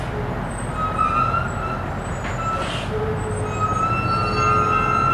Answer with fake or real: real